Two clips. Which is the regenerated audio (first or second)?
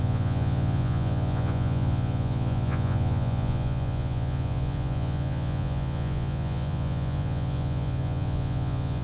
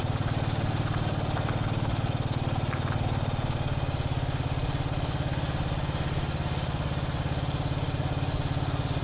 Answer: first